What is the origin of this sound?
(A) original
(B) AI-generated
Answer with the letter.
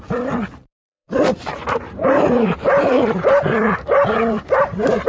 B